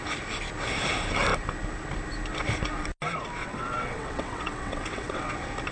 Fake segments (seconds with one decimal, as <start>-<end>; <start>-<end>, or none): 3.4-5.3